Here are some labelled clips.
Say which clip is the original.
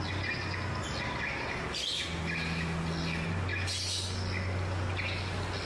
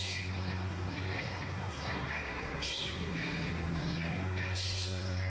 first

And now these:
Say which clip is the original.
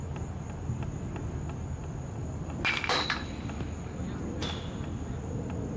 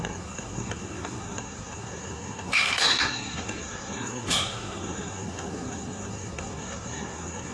first